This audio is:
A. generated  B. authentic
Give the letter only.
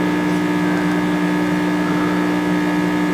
B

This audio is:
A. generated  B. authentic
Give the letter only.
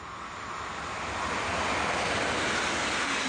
B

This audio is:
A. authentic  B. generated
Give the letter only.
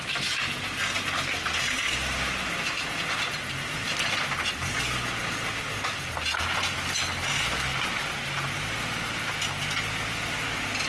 A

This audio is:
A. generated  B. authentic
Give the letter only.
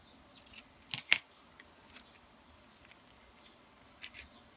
B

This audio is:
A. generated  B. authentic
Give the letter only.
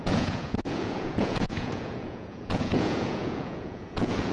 A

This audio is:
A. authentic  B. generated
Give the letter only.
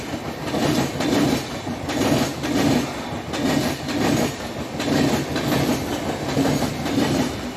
A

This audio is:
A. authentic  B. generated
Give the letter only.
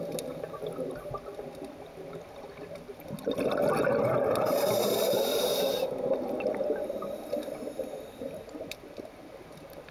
A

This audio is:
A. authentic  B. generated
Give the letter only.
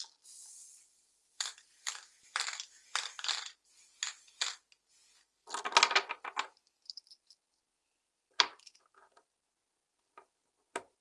A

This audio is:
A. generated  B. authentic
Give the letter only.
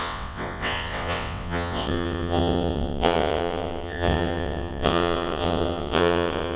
A